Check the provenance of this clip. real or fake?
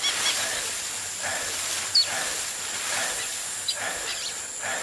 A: real